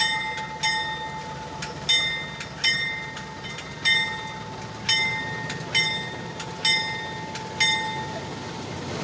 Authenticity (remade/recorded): recorded